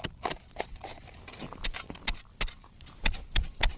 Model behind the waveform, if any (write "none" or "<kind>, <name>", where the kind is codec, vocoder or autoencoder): none